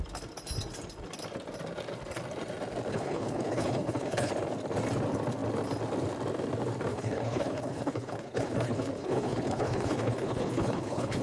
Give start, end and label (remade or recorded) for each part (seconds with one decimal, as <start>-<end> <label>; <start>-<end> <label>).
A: 0.0-2.9 recorded; 2.9-4.3 remade; 4.3-6.9 recorded; 6.9-11.2 remade